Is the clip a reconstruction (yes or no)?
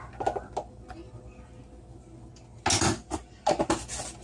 no